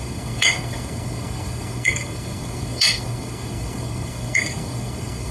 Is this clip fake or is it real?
fake